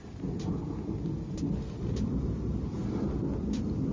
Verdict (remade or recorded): recorded